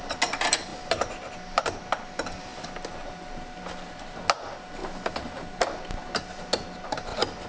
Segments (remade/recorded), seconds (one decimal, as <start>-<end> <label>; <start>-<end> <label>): 0.0-7.5 recorded